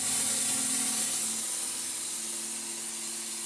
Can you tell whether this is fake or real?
real